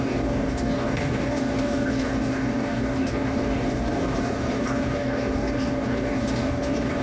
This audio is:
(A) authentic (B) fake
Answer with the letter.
B